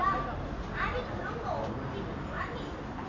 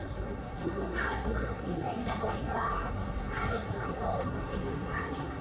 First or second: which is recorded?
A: first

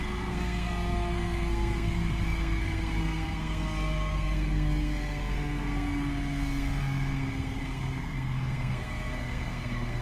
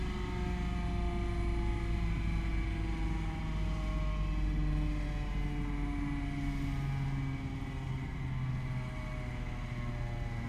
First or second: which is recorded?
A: second